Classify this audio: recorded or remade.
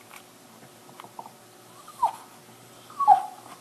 recorded